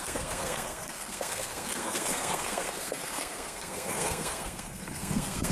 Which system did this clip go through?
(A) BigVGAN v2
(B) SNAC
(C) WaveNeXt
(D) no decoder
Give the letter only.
B